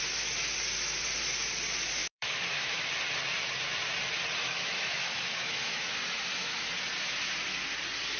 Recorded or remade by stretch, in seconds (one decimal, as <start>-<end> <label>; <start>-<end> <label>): 0.0-2.0 recorded; 2.0-2.9 remade; 2.9-4.4 recorded; 4.4-6.7 remade; 6.7-8.2 recorded